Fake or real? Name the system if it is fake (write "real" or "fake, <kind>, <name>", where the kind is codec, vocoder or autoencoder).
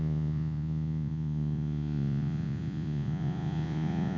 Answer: fake, vocoder, Vocos